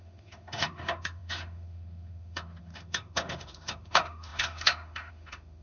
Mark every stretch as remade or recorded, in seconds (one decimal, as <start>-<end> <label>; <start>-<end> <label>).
0.0-5.6 remade